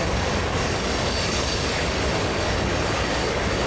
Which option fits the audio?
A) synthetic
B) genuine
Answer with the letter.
A